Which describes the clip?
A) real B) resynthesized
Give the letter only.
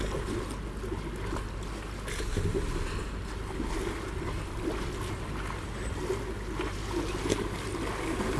A